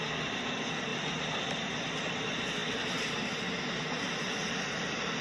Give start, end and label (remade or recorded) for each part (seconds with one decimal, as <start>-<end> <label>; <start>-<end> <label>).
0.0-5.2 recorded